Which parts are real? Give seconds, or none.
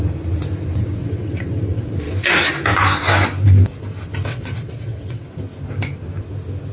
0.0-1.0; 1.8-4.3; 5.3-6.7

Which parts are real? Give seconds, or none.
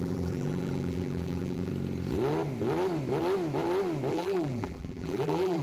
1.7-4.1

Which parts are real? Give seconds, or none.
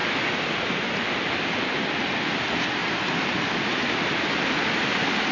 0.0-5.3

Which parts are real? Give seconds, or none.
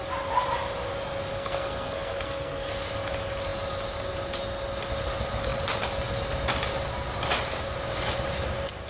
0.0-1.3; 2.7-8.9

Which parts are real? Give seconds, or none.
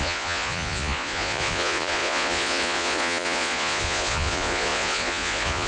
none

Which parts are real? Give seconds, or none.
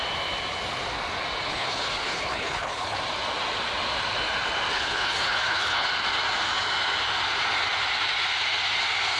0.0-1.5; 3.0-4.7; 5.9-9.2